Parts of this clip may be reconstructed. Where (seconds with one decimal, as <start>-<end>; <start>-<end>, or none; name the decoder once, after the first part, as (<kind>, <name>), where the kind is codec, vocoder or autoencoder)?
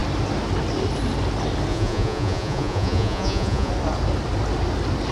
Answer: 1.7-3.7 (vocoder, Vocos)